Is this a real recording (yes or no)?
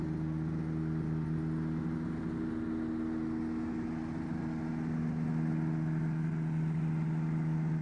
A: yes